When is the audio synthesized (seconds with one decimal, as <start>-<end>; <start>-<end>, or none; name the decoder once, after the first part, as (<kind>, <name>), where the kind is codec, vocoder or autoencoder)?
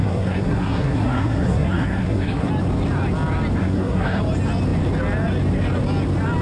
0.0-2.5 (codec, SNAC); 3.6-4.2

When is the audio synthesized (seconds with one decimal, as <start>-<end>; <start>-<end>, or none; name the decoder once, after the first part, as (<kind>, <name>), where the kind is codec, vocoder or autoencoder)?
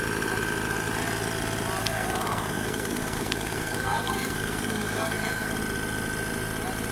1.8-5.5 (codec, SNAC)